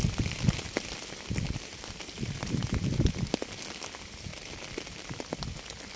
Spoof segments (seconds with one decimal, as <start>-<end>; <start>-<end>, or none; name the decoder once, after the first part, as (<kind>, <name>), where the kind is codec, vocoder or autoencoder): none